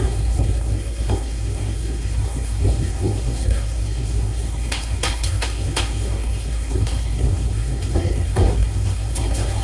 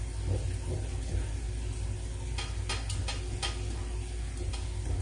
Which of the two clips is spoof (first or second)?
first